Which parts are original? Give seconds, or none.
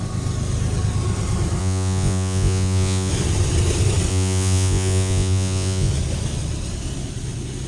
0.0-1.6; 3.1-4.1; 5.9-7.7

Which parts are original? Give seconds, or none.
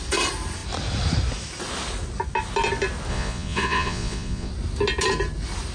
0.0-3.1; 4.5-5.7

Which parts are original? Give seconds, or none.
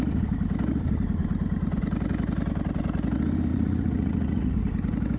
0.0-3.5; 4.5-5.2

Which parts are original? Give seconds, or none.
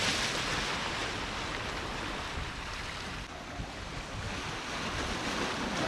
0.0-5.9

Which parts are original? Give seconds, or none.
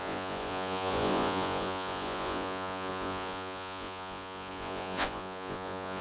none